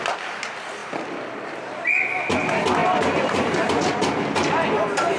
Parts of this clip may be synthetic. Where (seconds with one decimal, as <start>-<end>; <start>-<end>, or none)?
2.8-3.7